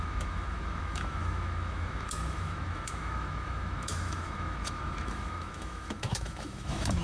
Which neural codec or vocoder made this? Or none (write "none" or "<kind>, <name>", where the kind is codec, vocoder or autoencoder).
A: autoencoder, DAC-VAE